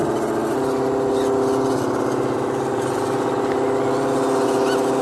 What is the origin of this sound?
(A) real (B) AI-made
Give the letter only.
A